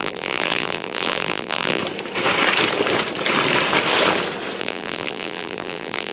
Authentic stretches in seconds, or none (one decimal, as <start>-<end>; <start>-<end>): 1.8-4.6